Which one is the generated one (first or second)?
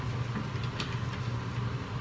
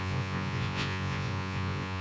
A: second